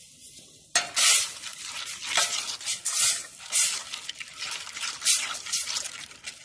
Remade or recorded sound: recorded